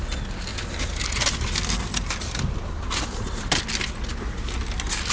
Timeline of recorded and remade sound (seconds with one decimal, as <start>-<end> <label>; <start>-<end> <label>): 0.0-5.1 recorded